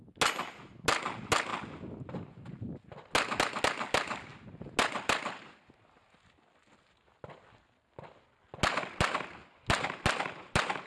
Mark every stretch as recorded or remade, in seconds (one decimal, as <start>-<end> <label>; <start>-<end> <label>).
0.0-10.9 recorded